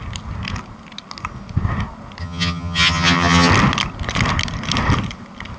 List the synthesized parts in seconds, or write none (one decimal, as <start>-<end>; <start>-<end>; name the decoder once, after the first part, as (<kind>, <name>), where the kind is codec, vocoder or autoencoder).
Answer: 2.2-3.5 (vocoder, HiFi-GAN)